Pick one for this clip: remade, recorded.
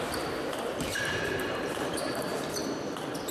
remade